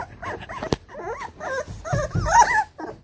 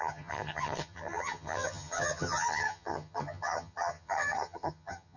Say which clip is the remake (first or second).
second